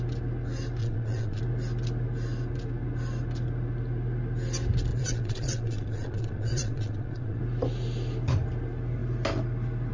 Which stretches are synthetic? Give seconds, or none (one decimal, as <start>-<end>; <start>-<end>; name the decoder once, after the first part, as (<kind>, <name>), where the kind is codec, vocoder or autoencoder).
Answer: 0.8-1.4 (vocoder, Vocos); 4.9-7.4